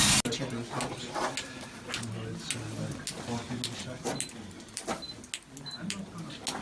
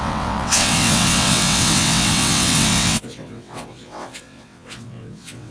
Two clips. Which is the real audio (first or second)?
first